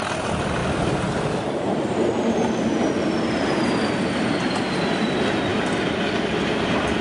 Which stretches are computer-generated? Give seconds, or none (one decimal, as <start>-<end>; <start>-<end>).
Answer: none